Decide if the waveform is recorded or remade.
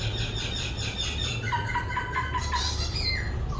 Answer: recorded